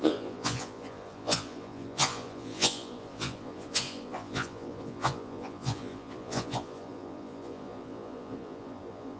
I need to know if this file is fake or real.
fake